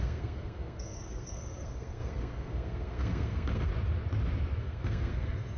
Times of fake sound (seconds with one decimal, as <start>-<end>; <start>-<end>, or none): 0.0-3.7; 4.6-5.6